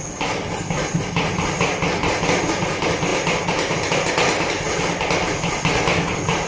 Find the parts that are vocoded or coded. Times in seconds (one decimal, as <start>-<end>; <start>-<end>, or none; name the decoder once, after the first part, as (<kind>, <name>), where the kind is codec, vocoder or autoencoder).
none